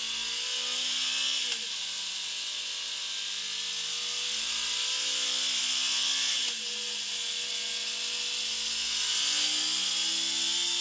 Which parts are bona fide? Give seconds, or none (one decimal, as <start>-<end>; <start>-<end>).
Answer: 0.0-10.8